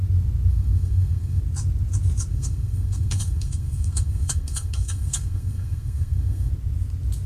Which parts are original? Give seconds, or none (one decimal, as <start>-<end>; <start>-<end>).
0.0-0.5; 1.4-2.3; 6.5-7.3